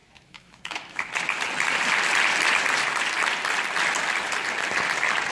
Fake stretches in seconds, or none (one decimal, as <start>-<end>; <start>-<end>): 0.0-1.1